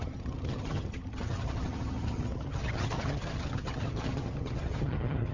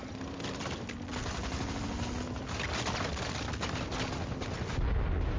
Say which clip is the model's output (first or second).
first